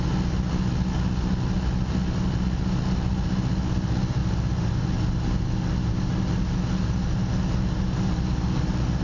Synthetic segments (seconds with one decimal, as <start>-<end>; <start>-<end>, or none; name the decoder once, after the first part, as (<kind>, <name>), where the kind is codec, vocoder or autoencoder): none